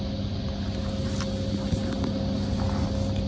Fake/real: real